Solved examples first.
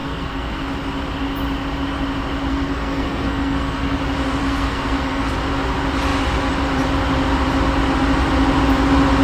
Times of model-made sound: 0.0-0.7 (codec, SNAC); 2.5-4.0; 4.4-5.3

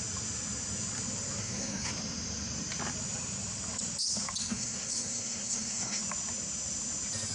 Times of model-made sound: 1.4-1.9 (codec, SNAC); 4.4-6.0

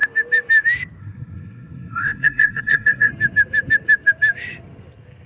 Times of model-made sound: 1.0-3.1 (codec, SNAC)